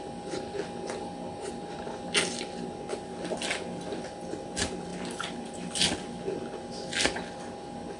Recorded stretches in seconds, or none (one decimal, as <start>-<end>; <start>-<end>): 0.0-8.0